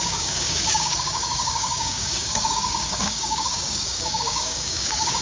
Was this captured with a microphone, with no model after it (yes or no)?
no